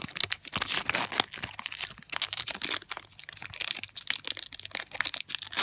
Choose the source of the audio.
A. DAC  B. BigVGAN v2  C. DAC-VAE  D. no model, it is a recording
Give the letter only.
D